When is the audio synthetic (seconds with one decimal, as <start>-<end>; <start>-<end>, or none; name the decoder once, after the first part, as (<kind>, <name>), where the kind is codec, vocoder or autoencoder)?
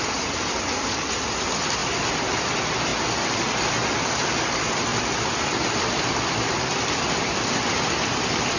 1.8-2.5 (vocoder, BigVGAN v2); 2.9-4.3; 4.9-7.4